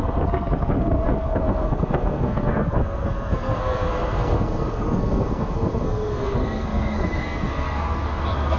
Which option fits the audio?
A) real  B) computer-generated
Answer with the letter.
B